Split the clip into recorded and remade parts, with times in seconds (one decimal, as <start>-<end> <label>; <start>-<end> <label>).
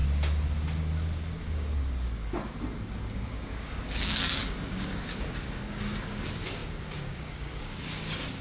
0.0-1.3 recorded; 1.3-2.2 remade; 2.2-3.1 recorded; 3.1-8.4 remade